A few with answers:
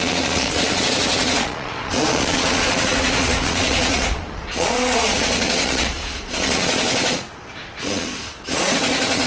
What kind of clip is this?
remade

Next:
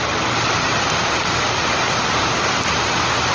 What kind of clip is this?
recorded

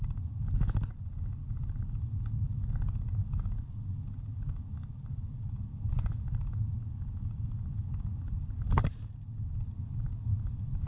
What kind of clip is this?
recorded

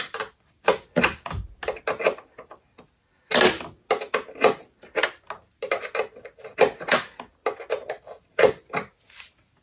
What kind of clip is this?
recorded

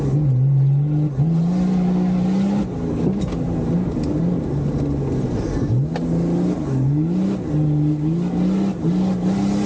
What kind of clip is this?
recorded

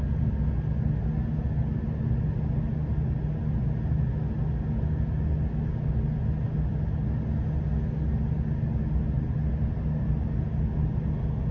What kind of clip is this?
recorded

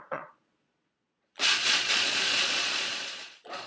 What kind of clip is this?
remade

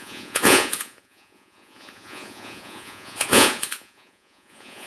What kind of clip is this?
remade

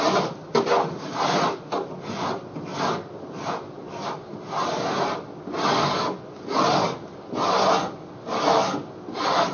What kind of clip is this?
recorded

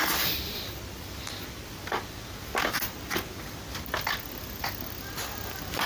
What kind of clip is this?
recorded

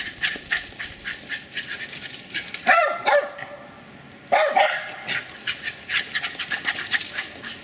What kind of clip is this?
recorded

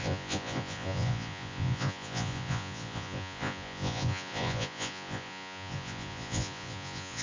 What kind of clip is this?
remade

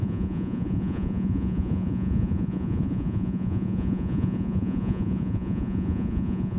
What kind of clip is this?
remade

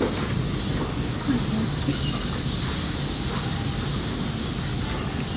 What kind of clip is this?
recorded